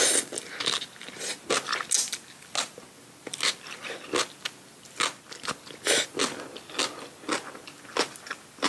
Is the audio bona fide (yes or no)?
yes